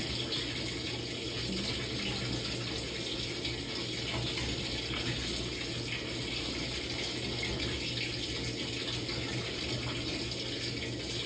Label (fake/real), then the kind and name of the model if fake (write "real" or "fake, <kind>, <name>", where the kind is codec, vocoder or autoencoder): real